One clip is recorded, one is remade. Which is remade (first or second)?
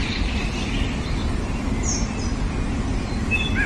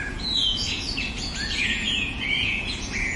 second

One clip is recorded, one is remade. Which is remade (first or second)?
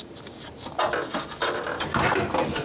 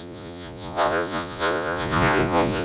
second